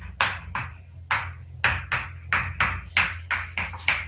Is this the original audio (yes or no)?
yes